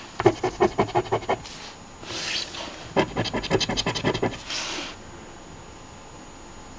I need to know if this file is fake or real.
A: real